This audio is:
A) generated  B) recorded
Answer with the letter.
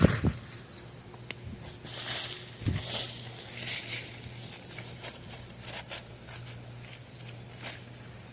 B